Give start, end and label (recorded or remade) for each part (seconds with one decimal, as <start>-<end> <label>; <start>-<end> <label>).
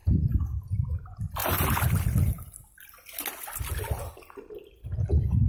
0.0-1.4 remade; 1.4-4.1 recorded; 4.1-5.5 remade